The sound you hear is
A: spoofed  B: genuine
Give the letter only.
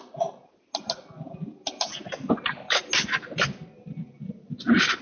B